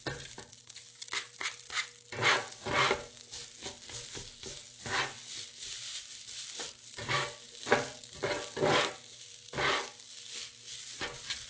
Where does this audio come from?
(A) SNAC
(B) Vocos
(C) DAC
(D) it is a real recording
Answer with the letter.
D